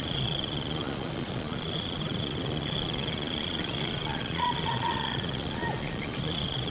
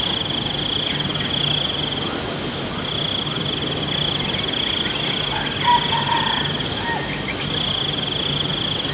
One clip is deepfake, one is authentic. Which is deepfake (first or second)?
first